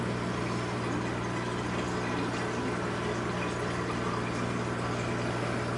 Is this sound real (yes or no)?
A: yes